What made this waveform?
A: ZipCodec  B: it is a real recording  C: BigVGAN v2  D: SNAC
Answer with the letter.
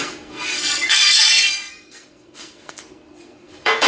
D